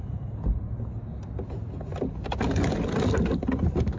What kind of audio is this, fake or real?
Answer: real